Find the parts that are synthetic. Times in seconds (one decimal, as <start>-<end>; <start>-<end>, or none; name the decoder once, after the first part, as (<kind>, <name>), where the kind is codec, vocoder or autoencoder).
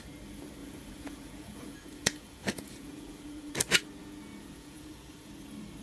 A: 0.6-3.5 (vocoder, Vocos); 4.0-5.3